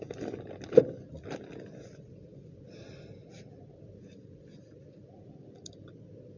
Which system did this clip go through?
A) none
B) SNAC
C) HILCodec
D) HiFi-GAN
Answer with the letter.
A